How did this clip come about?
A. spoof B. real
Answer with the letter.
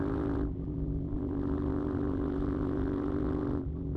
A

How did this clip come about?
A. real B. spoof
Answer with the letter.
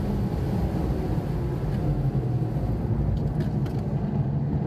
A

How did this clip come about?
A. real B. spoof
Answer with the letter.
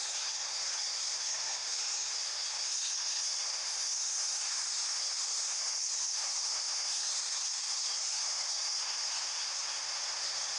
B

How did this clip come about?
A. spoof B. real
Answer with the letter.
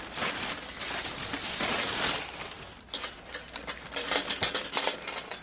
B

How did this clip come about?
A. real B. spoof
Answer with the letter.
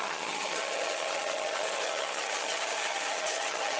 B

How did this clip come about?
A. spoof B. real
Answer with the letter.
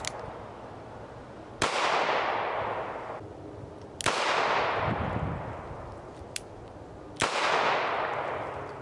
B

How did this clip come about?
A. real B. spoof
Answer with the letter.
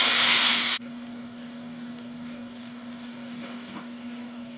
B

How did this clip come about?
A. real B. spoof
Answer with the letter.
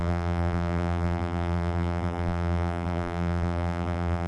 B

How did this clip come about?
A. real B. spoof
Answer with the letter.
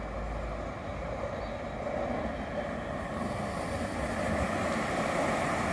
A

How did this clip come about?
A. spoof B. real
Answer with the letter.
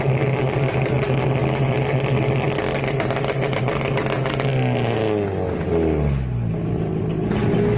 B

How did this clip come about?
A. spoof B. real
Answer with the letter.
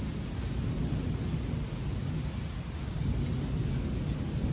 B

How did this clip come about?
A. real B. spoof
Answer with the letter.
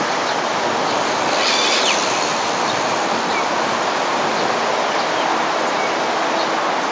A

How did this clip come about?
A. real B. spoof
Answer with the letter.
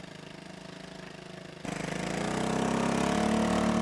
A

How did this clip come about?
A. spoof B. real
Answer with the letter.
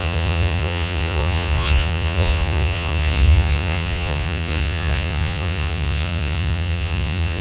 A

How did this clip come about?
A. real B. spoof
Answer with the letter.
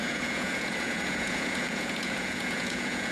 B